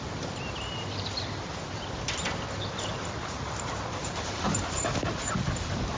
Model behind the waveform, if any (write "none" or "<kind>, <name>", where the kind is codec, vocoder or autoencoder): none